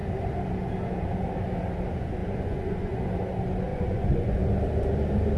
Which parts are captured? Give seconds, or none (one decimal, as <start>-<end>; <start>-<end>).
0.0-2.2; 3.0-3.7; 4.4-5.4